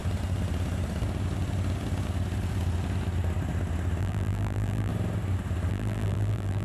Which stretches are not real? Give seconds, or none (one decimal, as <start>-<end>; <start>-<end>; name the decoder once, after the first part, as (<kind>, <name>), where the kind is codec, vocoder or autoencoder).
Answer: 4.0-4.9 (vocoder, BigVGAN v2); 5.7-6.6